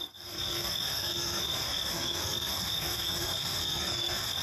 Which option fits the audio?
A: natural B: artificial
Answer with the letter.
B